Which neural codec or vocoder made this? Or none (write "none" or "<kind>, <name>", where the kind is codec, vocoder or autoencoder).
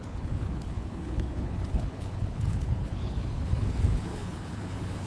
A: codec, HILCodec